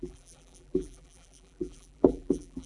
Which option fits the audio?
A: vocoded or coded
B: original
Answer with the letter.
A